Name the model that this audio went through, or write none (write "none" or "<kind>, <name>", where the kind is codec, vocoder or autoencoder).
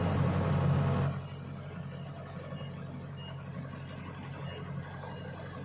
none